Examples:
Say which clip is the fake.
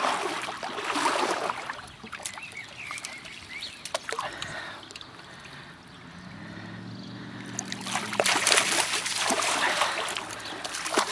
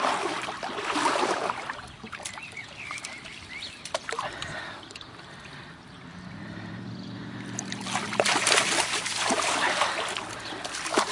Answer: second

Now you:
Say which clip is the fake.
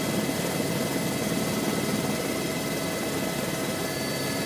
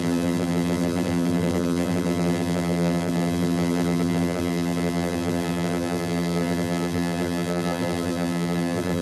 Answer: second